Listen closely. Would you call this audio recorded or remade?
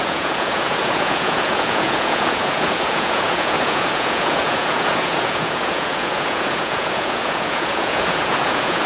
remade